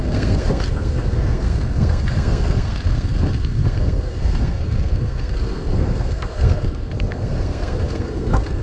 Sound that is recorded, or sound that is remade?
remade